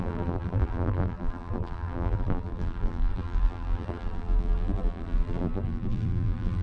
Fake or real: fake